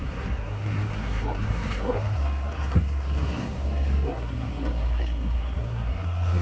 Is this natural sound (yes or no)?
no